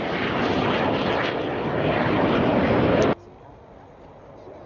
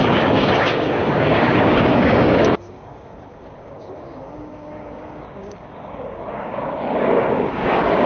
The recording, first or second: first